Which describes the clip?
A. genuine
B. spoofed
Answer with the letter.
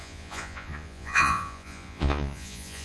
B